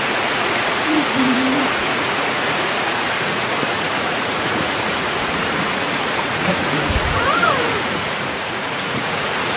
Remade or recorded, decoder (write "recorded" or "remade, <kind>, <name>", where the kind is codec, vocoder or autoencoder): remade, vocoder, Vocos